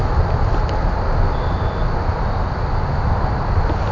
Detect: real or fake real